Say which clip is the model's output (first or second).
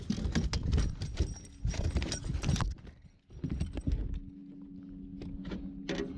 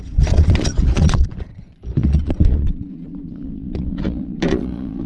second